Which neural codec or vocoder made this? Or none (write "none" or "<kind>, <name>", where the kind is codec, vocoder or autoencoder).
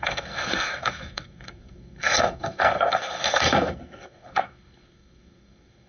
codec, SNAC